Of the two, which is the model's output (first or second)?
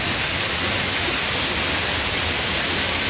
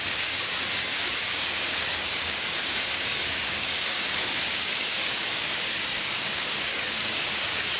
second